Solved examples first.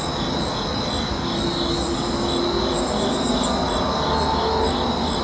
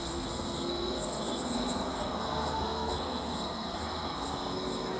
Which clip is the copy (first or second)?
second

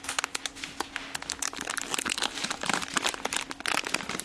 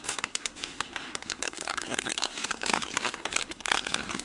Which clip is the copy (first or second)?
second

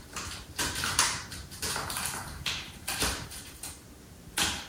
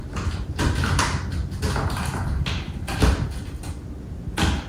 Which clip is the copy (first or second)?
first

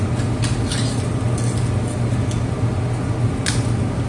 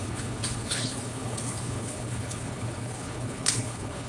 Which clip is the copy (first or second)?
second